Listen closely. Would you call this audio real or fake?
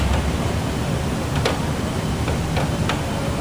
real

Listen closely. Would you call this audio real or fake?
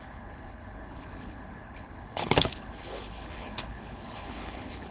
fake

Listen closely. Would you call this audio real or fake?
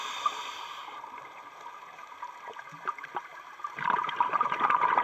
fake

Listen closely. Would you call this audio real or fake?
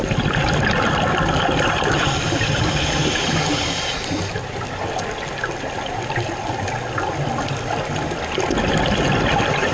real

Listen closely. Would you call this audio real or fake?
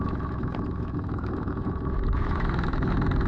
fake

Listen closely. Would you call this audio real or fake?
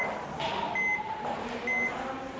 real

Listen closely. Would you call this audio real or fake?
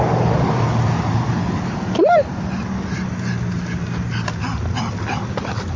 real